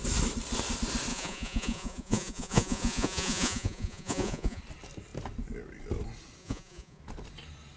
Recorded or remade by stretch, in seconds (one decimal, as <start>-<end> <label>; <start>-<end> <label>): 0.0-1.1 recorded; 1.1-4.6 remade; 4.6-6.4 recorded; 6.4-7.0 remade; 7.0-7.8 recorded